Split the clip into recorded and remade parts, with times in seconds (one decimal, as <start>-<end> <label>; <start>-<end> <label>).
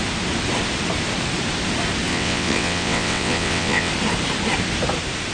0.0-2.1 recorded; 2.1-3.9 remade; 3.9-5.3 recorded